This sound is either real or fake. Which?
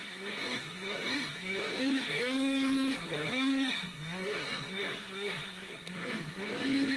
fake